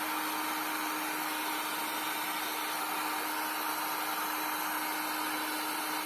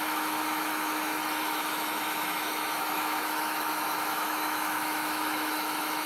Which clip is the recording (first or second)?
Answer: first